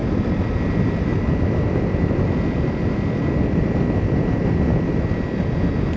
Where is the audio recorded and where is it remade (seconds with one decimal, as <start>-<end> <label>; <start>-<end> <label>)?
0.0-6.0 recorded